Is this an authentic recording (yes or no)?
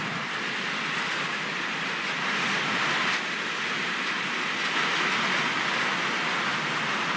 yes